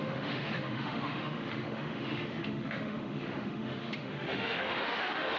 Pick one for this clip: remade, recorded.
remade